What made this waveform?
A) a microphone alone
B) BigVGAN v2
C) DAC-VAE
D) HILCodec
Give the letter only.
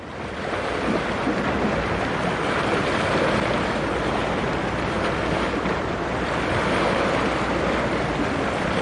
A